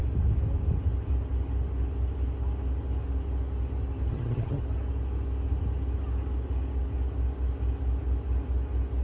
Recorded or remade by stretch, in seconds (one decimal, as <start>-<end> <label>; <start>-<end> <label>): 0.0-4.1 recorded; 4.1-4.6 remade; 4.6-9.0 recorded

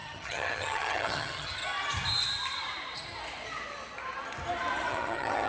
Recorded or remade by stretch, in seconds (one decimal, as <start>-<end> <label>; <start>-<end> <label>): 0.0-1.6 remade; 1.6-4.9 recorded; 4.9-5.5 remade

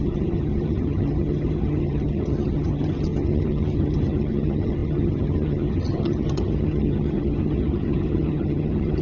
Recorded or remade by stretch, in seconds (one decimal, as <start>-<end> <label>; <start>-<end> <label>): 0.0-9.0 remade

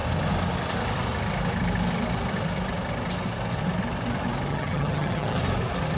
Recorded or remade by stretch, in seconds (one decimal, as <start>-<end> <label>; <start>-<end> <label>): 0.0-4.5 recorded; 4.5-5.4 remade; 5.4-6.0 recorded

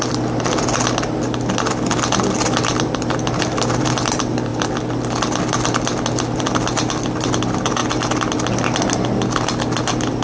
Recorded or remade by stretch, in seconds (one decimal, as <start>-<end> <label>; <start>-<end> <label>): 0.0-10.2 recorded

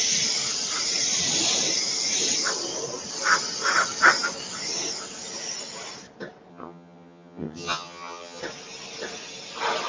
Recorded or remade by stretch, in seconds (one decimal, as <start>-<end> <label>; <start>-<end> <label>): 0.0-6.5 recorded; 6.5-8.4 remade; 8.4-9.9 recorded

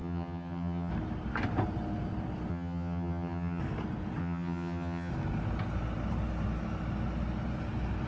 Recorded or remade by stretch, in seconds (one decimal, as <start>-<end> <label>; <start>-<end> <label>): 0.0-0.9 remade; 0.9-2.5 recorded; 2.5-3.6 remade; 3.6-4.2 recorded; 4.2-5.1 remade; 5.1-8.1 recorded